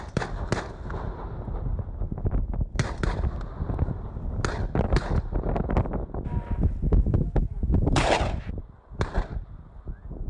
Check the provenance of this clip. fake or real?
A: real